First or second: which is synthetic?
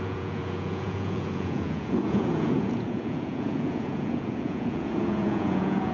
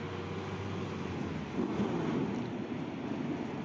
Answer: first